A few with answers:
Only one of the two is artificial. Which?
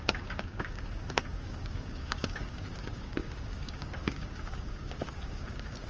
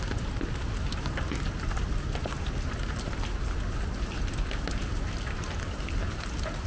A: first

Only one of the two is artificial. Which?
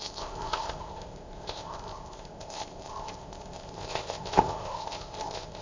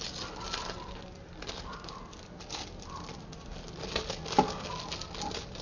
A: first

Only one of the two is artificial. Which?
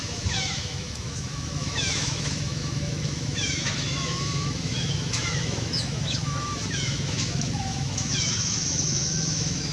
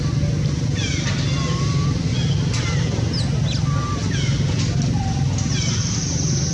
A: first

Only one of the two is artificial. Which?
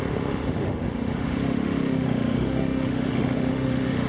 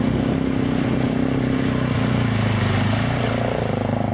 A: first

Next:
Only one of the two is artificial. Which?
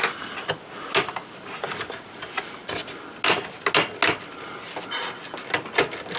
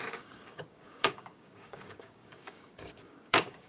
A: second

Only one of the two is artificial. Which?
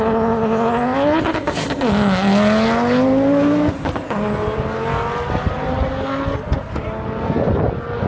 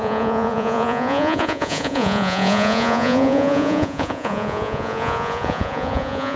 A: second